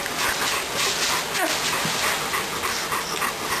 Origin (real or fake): real